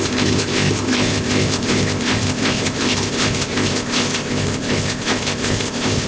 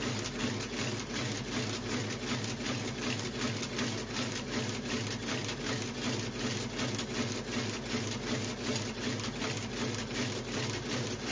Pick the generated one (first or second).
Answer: first